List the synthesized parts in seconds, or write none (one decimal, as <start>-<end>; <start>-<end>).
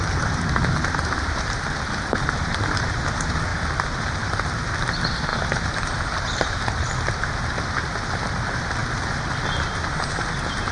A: 0.0-10.7